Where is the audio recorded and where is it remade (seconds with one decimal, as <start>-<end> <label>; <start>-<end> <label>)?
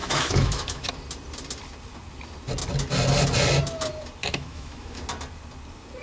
0.0-0.9 remade; 0.9-4.2 recorded; 4.2-5.0 remade; 5.0-6.0 recorded